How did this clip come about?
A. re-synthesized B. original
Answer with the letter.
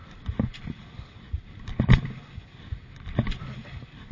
B